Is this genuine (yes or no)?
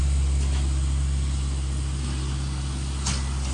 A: yes